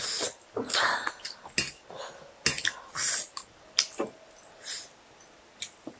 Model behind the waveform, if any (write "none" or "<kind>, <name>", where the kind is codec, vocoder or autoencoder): none